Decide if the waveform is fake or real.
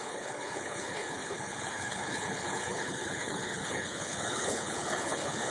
fake